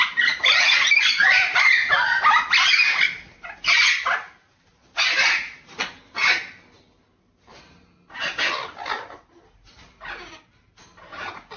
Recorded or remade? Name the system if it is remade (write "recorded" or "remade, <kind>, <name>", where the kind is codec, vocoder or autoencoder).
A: recorded